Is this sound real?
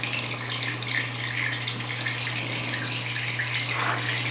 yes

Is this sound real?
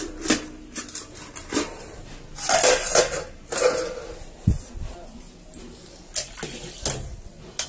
yes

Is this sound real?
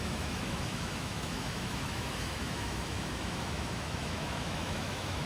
no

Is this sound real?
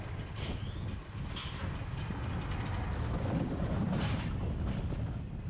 yes